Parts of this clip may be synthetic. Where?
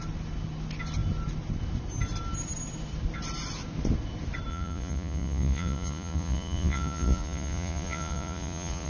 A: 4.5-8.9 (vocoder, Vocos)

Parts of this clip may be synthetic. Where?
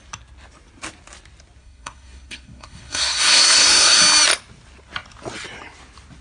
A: 1.6-4.0 (codec, SNAC)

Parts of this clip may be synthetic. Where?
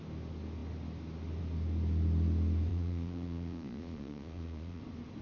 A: 2.7-4.8 (vocoder, Vocos)